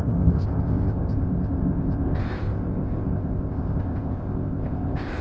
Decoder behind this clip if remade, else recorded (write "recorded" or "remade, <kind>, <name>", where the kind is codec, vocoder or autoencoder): remade, codec, ZipCodec